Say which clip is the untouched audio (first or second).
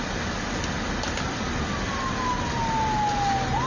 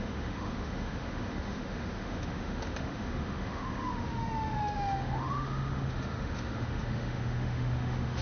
first